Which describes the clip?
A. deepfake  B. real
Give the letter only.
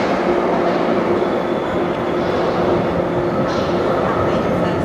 B